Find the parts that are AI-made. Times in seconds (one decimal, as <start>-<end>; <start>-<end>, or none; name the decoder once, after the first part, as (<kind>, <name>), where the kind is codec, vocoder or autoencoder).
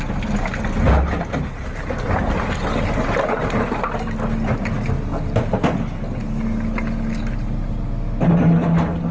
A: none